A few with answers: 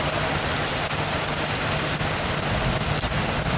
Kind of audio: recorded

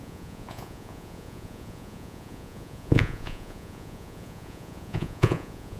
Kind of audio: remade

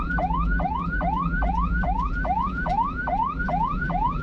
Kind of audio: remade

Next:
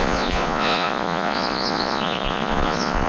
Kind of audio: remade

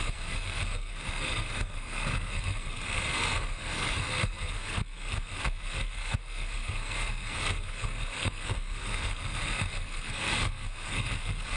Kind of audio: remade